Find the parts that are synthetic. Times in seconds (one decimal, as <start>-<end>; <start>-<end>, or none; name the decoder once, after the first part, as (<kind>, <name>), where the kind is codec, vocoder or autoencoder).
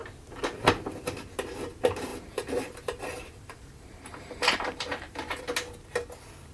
2.1-5.4 (vocoder, BigVGAN v2)